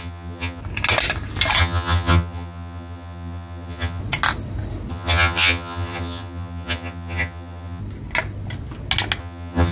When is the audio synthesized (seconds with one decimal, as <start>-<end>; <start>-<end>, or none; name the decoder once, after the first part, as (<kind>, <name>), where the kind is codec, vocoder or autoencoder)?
0.0-0.6 (vocoder, HiFi-GAN); 1.6-4.0; 4.9-7.8; 9.2-9.7